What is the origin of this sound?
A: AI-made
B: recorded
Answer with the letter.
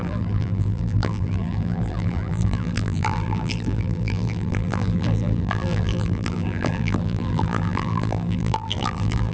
A